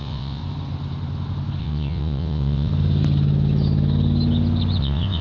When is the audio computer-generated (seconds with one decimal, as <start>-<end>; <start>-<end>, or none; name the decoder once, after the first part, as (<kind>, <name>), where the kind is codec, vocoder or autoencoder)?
0.0-0.4 (vocoder, WaveNeXt); 1.6-2.7; 4.8-5.2